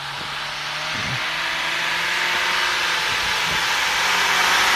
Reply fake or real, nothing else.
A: real